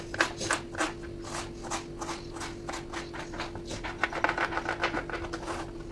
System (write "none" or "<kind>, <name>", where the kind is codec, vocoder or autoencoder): none